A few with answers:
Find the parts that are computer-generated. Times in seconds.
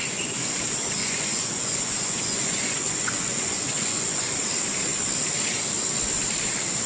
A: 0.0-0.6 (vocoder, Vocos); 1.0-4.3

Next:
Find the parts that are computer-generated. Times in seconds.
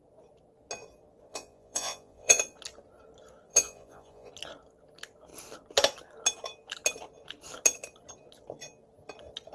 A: 1.3-2.4 (vocoder, Vocos); 3.5-4.3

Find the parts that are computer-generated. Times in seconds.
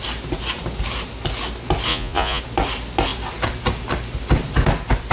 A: 1.9-2.4 (vocoder, Vocos)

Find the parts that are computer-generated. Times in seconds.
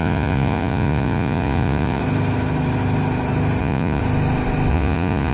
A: 0.0-2.0 (vocoder, Vocos); 3.6-4.0; 4.7-5.3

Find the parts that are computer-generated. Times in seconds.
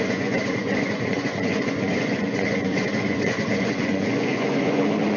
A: 0.0-5.2 (vocoder, Vocos)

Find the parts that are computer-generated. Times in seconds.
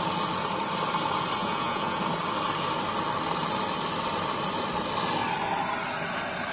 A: 1.4-2.0 (vocoder, Vocos)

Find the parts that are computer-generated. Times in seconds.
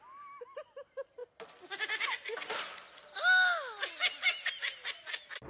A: none